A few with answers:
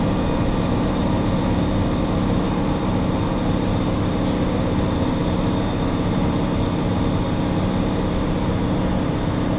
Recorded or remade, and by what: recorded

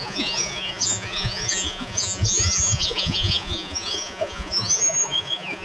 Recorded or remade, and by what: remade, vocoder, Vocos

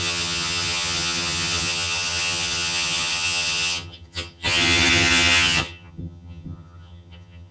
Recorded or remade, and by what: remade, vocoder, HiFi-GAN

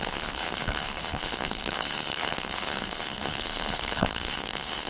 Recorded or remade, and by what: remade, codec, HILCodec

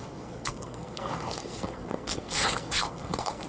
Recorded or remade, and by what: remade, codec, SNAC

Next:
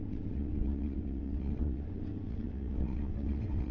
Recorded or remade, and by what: remade, vocoder, WaveNeXt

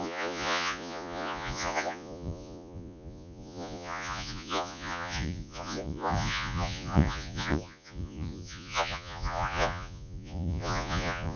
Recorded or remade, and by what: remade, vocoder, Vocos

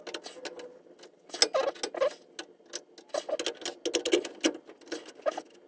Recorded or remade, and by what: recorded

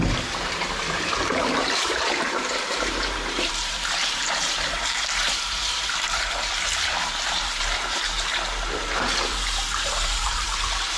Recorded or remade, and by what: remade, vocoder, BigVGAN v2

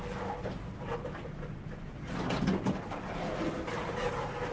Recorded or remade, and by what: recorded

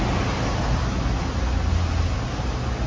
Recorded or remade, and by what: recorded